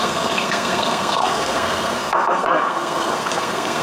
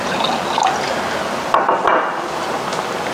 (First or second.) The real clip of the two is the second